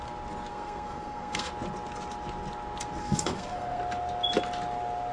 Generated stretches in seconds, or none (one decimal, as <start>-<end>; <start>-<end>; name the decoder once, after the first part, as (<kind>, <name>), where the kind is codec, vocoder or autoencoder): 0.5-1.5 (codec, SNAC); 3.0-3.8